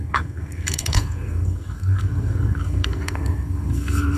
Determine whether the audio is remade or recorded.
remade